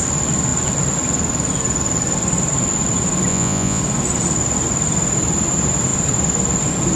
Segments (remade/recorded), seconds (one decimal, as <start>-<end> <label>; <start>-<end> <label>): 0.0-3.3 recorded; 3.3-3.8 remade; 3.8-7.0 recorded